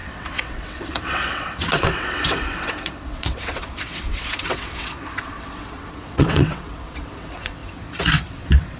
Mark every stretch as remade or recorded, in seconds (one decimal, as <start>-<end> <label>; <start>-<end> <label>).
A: 0.0-8.8 remade